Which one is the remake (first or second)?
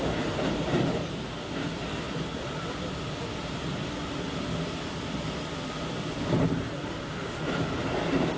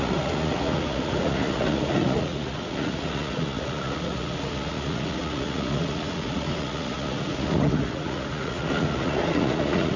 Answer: second